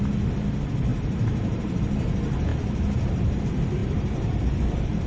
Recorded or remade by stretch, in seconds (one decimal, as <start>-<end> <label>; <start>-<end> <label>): 0.0-0.9 recorded; 0.9-1.8 remade; 1.8-3.8 recorded; 3.8-4.6 remade; 4.6-5.1 recorded